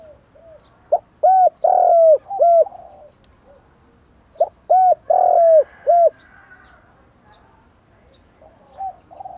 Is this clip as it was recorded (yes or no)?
yes